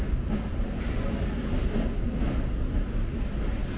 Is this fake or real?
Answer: real